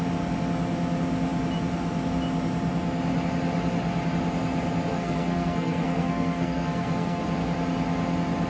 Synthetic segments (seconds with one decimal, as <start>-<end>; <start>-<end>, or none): 4.9-7.2